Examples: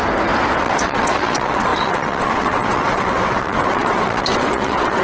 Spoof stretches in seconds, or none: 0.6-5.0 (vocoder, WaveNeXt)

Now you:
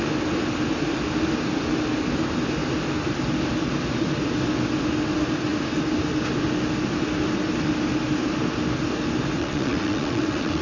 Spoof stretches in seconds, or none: 9.4-10.6 (vocoder, WaveNeXt)

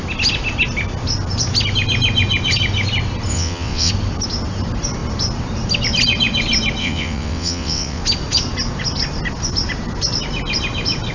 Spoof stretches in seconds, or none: 3.3-3.9 (vocoder, WaveNeXt); 6.8-8.0

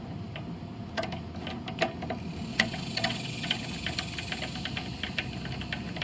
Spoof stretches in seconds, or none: 2.5-3.5 (vocoder, WaveNeXt)

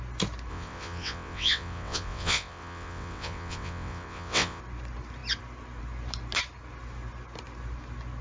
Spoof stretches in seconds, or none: 0.5-4.6 (vocoder, WaveNeXt)

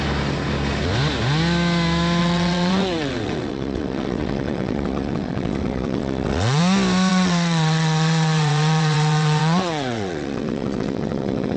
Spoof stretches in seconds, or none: 2.2-6.6 (vocoder, WaveNeXt); 7.1-11.6